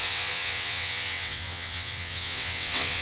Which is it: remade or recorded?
remade